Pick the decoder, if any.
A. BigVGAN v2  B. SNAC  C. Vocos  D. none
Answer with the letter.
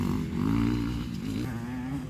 D